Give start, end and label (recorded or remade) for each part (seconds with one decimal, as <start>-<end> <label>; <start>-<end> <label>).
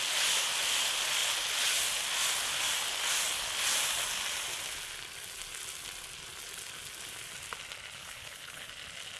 0.0-8.0 recorded; 8.0-8.7 remade; 8.7-9.2 recorded